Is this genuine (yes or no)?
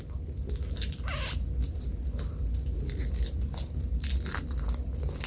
yes